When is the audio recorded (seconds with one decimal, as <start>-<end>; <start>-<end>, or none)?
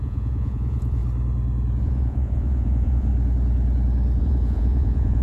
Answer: 1.0-1.8; 3.1-4.2